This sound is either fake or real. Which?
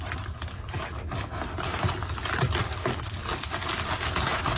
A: real